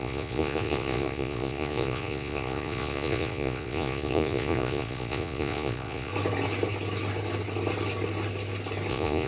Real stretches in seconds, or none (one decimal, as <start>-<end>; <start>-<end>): 6.1-8.9